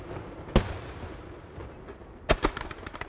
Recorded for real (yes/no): yes